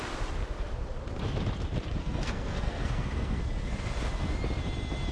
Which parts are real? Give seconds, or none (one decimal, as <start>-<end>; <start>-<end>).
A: 0.0-2.0; 3.4-5.1